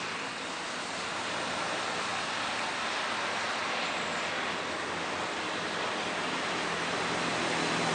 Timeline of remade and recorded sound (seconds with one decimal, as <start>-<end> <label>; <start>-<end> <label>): 0.0-7.9 recorded